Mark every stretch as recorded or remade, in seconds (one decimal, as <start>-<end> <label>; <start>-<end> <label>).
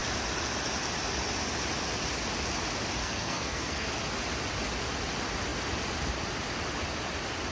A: 0.0-3.0 recorded; 3.0-3.9 remade; 3.9-7.5 recorded